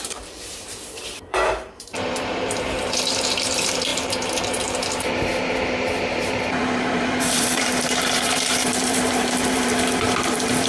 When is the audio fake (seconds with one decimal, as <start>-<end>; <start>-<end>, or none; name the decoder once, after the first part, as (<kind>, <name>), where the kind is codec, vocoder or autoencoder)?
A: 0.0-10.7 (vocoder, BigVGAN v2)